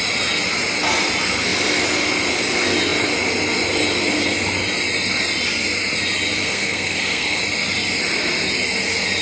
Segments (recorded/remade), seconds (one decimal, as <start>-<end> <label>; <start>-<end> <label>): 0.0-6.4 recorded; 6.4-7.4 remade; 7.4-9.2 recorded